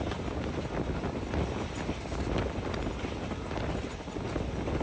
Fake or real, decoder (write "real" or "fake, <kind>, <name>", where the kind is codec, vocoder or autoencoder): real